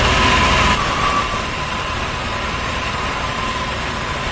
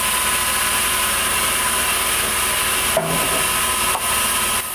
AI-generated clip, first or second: first